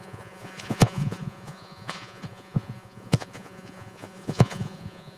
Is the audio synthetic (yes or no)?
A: yes